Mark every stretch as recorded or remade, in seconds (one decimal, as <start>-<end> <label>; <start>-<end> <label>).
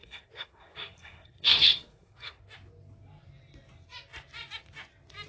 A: 0.0-2.4 remade; 2.4-5.3 recorded